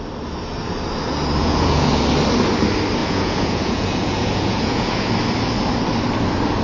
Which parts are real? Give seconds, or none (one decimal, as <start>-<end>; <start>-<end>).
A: 0.0-1.4; 2.0-3.0; 5.1-6.6